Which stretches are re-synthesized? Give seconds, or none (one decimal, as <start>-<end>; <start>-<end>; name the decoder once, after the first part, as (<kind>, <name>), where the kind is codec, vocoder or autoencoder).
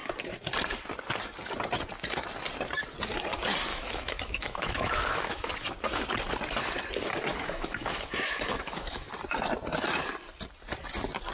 3.7-5.5 (autoencoder, DAC-VAE); 7.3-9.1